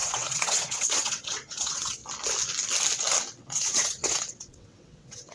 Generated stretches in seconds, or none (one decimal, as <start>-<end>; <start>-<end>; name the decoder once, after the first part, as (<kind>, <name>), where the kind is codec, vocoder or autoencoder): 0.0-2.0 (vocoder, WaveNeXt); 3.4-5.3